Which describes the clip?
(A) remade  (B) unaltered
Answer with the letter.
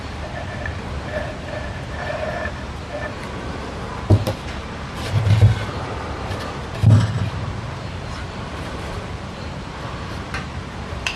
A